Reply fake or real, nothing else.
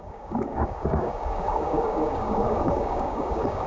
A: fake